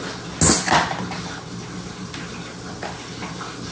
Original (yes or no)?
yes